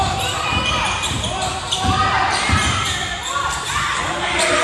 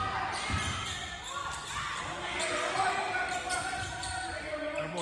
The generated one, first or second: first